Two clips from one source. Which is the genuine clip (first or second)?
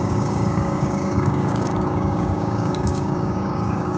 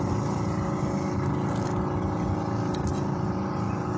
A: second